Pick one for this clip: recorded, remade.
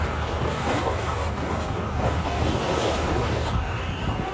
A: remade